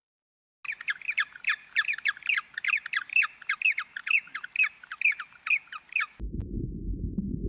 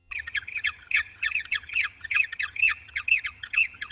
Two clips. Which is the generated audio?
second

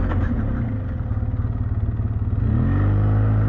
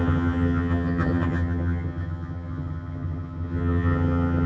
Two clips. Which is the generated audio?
second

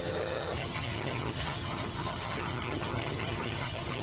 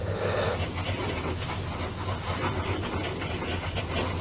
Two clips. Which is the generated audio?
first